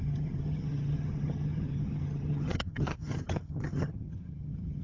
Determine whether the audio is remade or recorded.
remade